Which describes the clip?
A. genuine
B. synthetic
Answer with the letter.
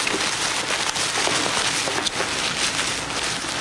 A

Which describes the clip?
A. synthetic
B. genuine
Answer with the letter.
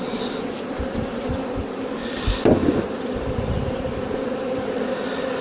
A